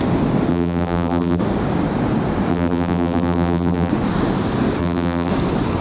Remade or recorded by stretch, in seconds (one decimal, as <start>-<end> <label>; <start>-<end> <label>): 0.0-0.5 recorded; 0.5-1.4 remade; 1.4-2.5 recorded; 2.5-3.9 remade; 3.9-4.8 recorded; 4.8-5.3 remade; 5.3-5.8 recorded